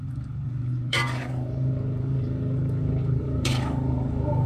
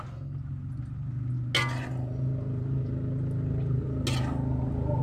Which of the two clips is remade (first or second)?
first